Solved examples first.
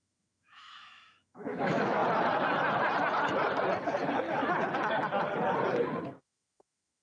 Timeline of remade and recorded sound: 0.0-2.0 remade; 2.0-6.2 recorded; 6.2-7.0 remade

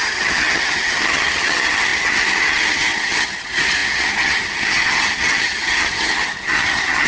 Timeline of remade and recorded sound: 0.0-7.1 remade

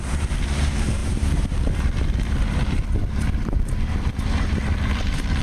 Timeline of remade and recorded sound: 0.0-5.4 remade

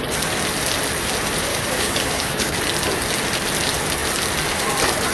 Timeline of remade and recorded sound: 0.0-1.5 recorded; 1.5-2.6 remade; 2.6-5.1 recorded

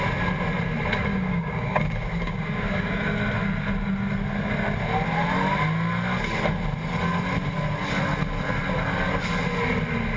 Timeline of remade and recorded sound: 0.0-1.1 recorded; 1.1-3.2 remade; 3.2-10.2 recorded

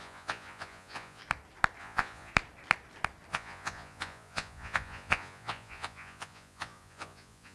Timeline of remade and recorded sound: 0.0-1.2 remade; 1.2-1.8 recorded; 1.8-2.3 remade; 2.3-3.3 recorded; 3.3-7.5 remade